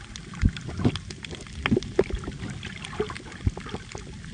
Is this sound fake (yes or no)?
no